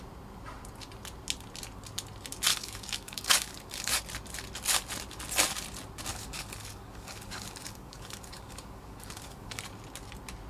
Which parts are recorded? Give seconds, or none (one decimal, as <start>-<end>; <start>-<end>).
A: 0.0-2.5; 4.0-6.1; 9.6-10.5